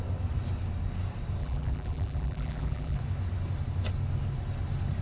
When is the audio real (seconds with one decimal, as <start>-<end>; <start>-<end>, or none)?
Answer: 0.0-1.4; 3.0-5.0